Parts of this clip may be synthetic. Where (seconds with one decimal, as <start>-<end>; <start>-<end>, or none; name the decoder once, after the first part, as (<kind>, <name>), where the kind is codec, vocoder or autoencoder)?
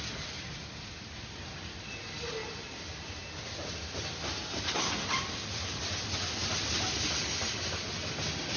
none